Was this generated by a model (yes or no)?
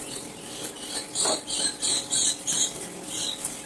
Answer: no